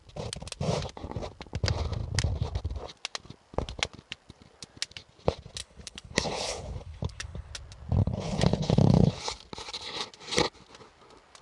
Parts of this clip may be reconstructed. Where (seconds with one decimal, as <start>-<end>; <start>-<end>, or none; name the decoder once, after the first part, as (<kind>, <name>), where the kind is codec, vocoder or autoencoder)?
5.6-7.5 (codec, HILCodec); 8.0-9.2